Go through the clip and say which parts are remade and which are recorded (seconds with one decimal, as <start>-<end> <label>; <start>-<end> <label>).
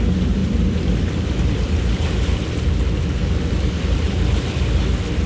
0.0-0.4 recorded; 0.4-2.6 remade; 2.6-3.2 recorded; 3.2-5.3 remade